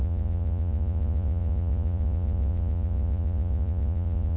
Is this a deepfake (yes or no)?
yes